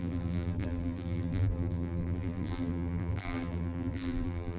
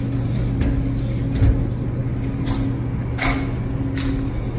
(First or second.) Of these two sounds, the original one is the second